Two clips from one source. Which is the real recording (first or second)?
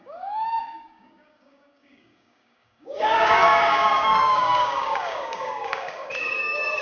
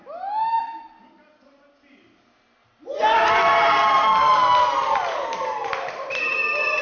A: second